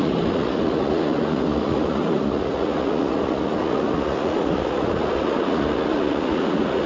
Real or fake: fake